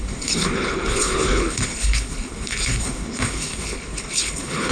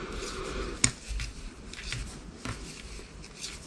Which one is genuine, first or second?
second